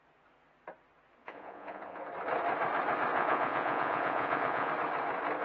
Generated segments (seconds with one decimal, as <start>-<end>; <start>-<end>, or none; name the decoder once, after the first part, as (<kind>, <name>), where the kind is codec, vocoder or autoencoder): 1.2-2.0 (vocoder, Vocos); 3.1-4.7